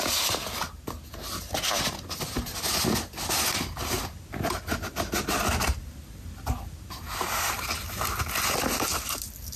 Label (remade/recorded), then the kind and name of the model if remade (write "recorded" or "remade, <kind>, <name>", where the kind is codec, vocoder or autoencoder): recorded